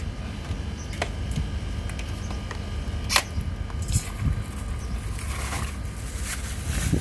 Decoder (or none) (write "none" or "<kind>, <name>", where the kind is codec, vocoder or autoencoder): none